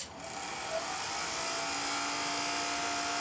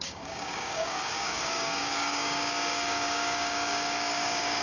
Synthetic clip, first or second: second